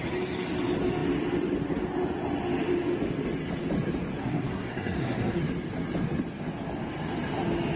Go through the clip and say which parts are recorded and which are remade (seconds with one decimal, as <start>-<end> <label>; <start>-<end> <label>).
0.0-4.2 recorded; 4.2-5.4 remade; 5.4-7.8 recorded